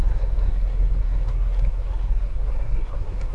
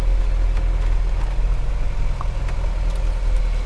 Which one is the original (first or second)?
second